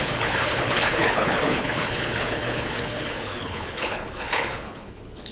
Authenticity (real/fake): fake